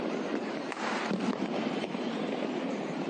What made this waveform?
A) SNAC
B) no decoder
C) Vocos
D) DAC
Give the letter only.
B